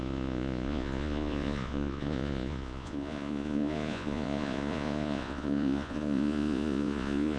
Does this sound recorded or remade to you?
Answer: remade